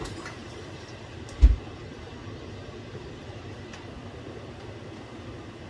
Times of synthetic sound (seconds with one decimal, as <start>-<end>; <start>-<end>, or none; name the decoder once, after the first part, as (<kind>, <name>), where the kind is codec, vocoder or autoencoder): none